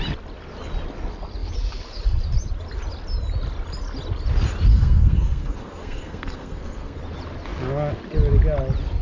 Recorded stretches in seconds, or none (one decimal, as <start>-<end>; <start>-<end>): 0.0-4.7; 7.0-9.0